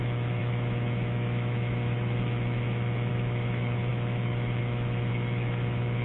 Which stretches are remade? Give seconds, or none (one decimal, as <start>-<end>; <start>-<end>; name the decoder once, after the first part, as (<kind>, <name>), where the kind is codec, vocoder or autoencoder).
0.0-6.0 (autoencoder, DAC-VAE)